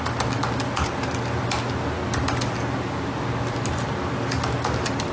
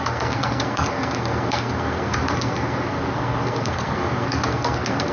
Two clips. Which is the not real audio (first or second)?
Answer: second